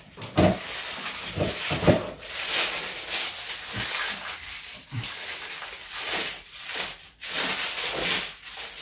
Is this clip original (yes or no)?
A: yes